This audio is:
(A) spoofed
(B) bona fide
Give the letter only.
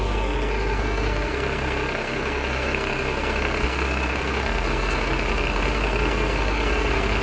A